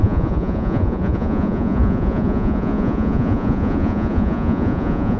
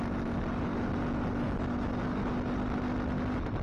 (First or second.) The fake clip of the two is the first